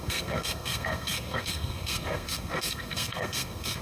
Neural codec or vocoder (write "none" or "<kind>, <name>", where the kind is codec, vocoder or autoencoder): codec, SNAC